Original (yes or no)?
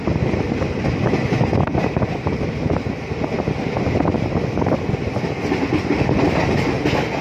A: yes